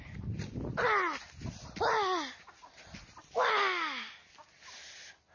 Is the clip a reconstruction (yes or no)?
no